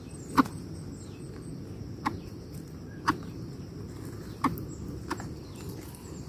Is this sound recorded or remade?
recorded